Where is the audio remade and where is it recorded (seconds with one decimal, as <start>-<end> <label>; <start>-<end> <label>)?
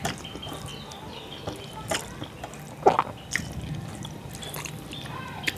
0.0-0.7 remade; 0.7-4.1 recorded; 4.1-5.6 remade